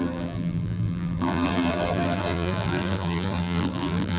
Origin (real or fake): fake